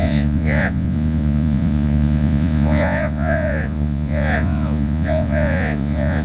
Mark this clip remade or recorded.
remade